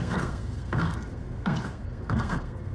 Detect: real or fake fake